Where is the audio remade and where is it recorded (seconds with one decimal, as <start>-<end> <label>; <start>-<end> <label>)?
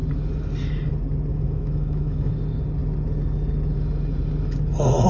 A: 0.0-1.3 recorded; 1.3-2.3 remade; 2.3-5.1 recorded